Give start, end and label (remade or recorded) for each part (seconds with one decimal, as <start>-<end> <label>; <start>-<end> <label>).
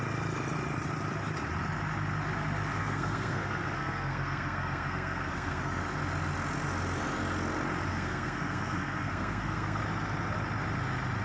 0.0-2.8 recorded; 2.8-5.8 remade; 5.8-7.9 recorded; 7.9-9.8 remade; 9.8-11.2 recorded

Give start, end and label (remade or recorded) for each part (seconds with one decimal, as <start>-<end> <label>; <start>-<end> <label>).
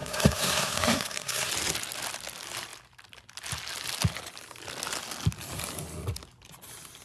0.0-1.5 remade; 1.5-7.0 recorded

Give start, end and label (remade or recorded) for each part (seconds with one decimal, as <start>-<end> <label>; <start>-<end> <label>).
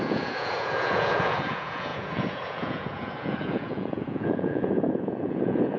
0.0-5.8 remade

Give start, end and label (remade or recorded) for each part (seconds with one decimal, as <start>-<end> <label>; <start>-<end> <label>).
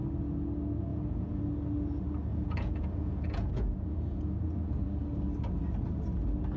0.0-0.9 recorded; 0.9-1.4 remade; 1.4-2.3 recorded; 2.3-4.8 remade; 4.8-6.6 recorded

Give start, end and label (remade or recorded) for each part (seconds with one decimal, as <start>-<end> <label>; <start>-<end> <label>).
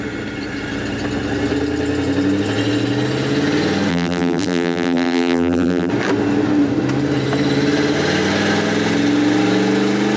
0.0-3.9 recorded; 3.9-5.9 remade; 5.9-10.2 recorded